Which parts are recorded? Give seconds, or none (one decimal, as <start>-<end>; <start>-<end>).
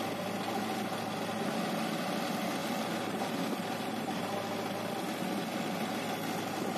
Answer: 0.0-2.6; 4.2-6.8